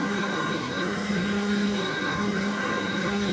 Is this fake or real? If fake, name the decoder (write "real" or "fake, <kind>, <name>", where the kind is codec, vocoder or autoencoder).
fake, codec, SNAC